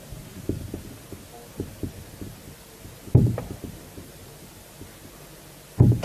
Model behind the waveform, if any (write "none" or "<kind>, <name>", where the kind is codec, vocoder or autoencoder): none